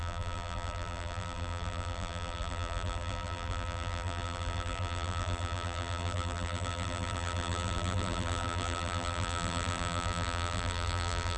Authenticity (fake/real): fake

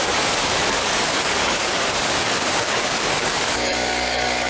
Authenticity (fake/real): fake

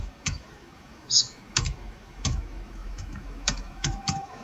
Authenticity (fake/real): fake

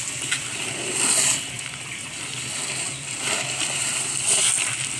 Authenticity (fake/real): real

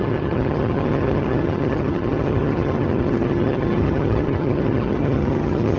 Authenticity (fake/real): fake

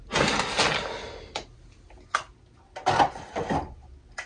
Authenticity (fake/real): real